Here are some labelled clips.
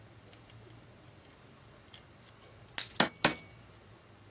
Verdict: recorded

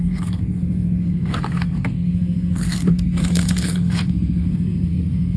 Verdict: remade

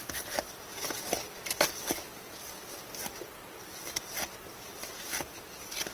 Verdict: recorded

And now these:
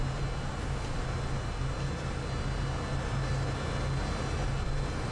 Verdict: recorded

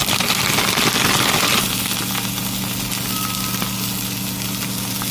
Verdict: recorded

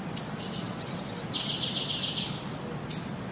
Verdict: recorded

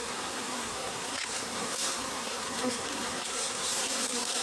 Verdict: remade